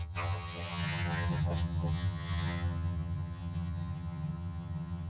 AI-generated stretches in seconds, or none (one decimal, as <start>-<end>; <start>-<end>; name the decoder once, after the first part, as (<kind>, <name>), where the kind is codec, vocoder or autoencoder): 0.0-5.1 (vocoder, HiFi-GAN)